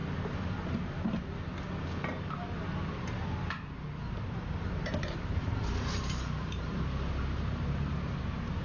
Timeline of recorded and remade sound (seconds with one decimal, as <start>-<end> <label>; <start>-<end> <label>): 0.0-4.9 recorded; 4.9-7.2 remade; 7.2-8.6 recorded